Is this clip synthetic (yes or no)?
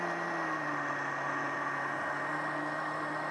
no